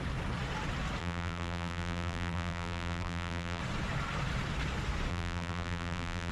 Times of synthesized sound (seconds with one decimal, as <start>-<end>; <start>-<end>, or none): 1.0-3.6; 5.1-6.3